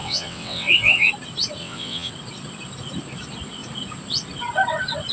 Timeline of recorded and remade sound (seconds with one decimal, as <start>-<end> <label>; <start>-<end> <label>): 0.0-1.1 remade; 1.1-1.6 recorded; 1.6-2.1 remade; 2.1-5.1 recorded